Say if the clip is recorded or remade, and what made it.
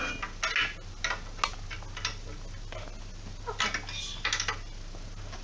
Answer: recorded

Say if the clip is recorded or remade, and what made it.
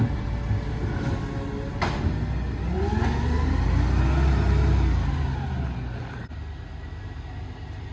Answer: recorded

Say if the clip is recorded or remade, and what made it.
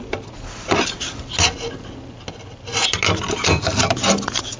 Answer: recorded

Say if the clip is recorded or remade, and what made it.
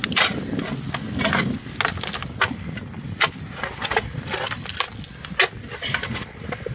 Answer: recorded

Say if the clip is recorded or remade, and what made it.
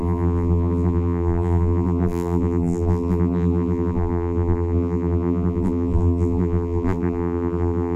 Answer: remade, vocoder, BigVGAN v2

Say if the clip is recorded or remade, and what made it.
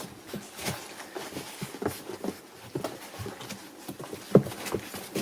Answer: recorded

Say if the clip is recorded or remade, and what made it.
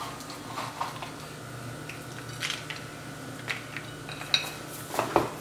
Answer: recorded